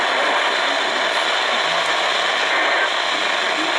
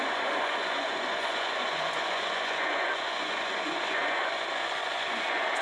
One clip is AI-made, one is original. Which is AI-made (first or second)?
second